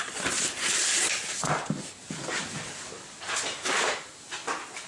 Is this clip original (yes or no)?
yes